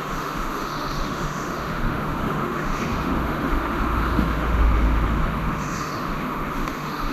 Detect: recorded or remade remade